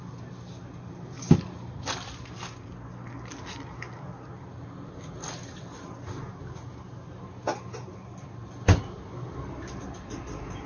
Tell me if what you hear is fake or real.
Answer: real